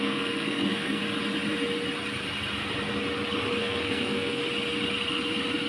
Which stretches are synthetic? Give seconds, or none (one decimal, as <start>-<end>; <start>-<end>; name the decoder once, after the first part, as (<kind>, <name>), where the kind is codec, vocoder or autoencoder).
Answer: 0.0-1.0 (codec, SNAC); 3.6-4.4